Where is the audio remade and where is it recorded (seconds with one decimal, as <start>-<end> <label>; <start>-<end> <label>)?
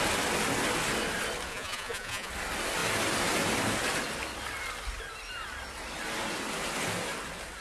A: 0.0-1.5 recorded; 1.5-2.3 remade; 2.3-7.6 recorded